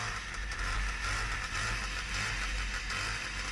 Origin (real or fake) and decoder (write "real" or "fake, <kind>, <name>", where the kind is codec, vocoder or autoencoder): real